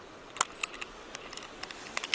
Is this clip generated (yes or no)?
no